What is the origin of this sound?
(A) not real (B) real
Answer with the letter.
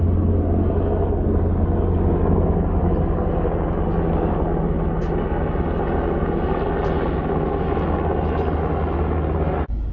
B